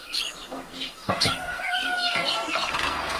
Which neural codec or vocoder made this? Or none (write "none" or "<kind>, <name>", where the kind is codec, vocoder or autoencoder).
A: codec, SNAC